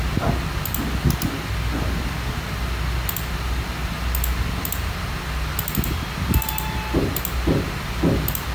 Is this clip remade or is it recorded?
recorded